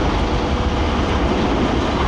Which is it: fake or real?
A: real